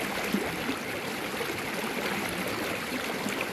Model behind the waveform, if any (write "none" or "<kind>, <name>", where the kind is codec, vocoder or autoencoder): none